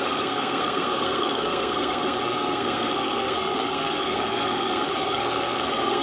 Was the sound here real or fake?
fake